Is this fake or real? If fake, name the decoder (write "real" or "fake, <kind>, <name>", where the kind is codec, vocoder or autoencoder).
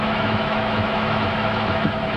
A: fake, autoencoder, DAC-VAE